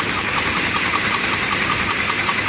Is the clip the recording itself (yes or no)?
no